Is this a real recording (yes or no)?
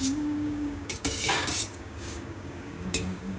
no